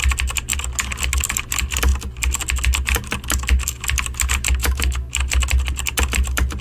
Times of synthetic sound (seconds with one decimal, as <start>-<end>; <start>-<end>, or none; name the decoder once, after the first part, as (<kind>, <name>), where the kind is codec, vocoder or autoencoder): 4.6-5.1 (autoencoder, DAC-VAE)